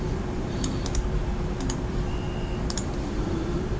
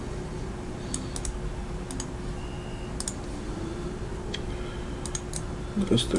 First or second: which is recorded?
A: second